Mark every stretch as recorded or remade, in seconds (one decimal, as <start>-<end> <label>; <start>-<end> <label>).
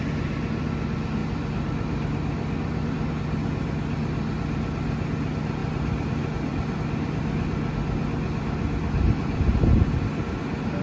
0.0-1.2 recorded; 1.2-3.1 remade; 3.1-5.6 recorded; 5.6-6.8 remade; 6.8-8.8 recorded; 8.8-9.5 remade; 9.5-10.8 recorded